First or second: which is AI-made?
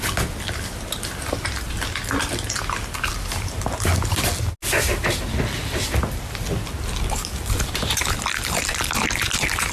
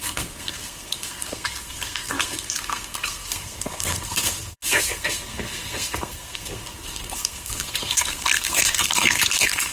second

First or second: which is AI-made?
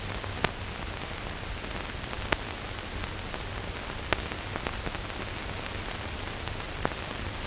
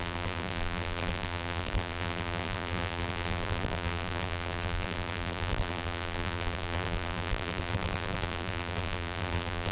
second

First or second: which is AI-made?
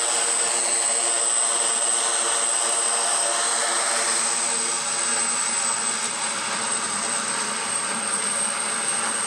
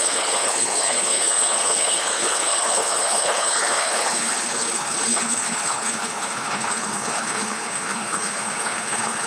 second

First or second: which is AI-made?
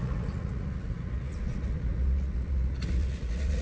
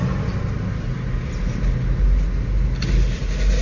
first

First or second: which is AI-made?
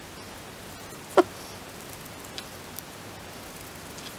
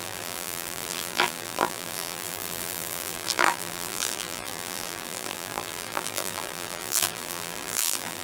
second